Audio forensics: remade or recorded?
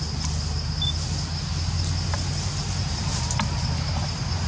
recorded